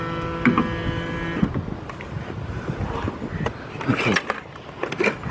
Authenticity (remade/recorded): recorded